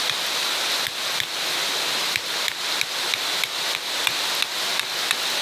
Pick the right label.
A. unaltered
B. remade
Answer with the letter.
A